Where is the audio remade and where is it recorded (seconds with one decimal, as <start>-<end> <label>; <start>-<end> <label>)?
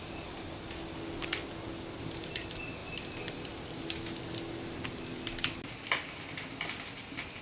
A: 0.0-7.4 recorded